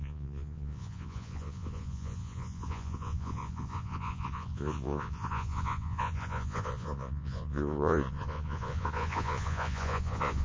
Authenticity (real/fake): fake